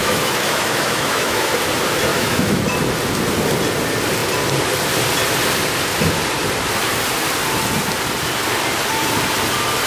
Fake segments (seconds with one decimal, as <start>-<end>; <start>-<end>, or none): 0.0-1.5; 2.1-2.6

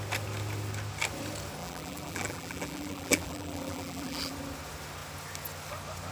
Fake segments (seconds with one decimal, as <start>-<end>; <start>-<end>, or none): 1.6-4.3

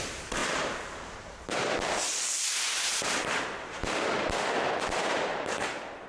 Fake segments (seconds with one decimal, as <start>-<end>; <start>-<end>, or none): 0.0-3.8; 4.8-6.1

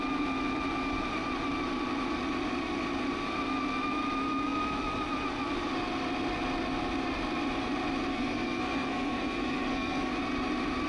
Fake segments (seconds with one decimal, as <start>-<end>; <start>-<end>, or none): 8.1-10.1